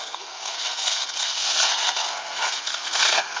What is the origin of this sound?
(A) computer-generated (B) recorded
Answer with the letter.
A